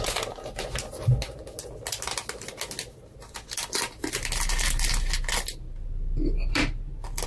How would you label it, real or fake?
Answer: real